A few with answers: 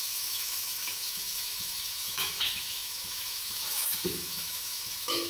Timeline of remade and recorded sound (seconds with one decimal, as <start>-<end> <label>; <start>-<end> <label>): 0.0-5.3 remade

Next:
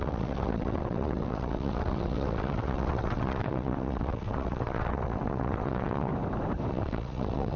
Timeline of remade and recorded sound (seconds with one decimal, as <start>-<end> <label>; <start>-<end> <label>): 0.0-6.1 remade; 6.1-6.7 recorded; 6.7-7.6 remade

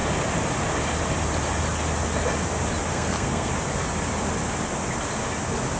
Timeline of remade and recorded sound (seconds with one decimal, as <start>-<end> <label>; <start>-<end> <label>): 0.0-2.9 recorded; 2.9-3.5 remade; 3.5-5.8 recorded

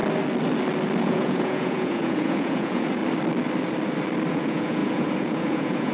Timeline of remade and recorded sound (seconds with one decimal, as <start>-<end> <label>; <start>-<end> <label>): 0.0-1.0 recorded; 1.0-3.0 remade; 3.0-4.3 recorded; 4.3-5.9 remade